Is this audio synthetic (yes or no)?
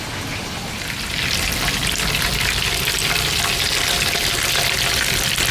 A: no